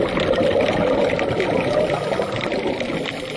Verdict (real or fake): real